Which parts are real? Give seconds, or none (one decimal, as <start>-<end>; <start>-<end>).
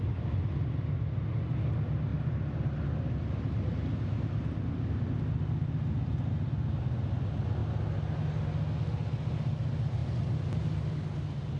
0.0-11.6